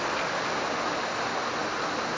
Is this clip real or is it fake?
real